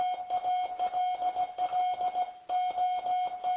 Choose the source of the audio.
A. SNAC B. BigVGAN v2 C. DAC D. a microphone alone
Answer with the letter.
D